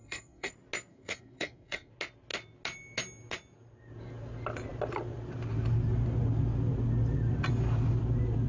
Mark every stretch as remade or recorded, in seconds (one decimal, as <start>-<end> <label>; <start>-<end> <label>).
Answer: 0.0-0.5 remade; 0.5-0.9 recorded; 0.9-1.9 remade; 1.9-8.5 recorded

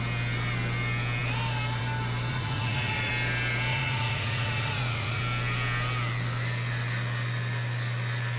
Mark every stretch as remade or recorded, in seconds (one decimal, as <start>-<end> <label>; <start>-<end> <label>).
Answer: 0.0-2.3 recorded; 2.3-3.1 remade; 3.1-3.7 recorded; 3.7-5.2 remade; 5.2-8.4 recorded

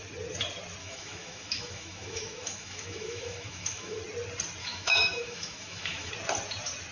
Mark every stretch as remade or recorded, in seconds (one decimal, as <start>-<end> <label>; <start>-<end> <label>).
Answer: 0.0-0.8 recorded; 0.8-4.0 remade; 4.0-4.6 recorded; 4.6-6.1 remade; 6.1-6.9 recorded

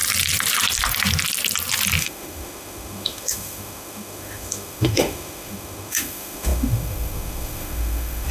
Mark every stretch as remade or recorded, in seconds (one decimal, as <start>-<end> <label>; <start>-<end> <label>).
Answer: 0.0-2.0 recorded; 2.0-8.3 remade

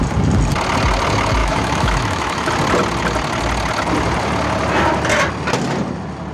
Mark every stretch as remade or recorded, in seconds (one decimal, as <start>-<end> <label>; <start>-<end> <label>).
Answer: 0.0-1.4 recorded; 1.4-2.5 remade; 2.5-6.3 recorded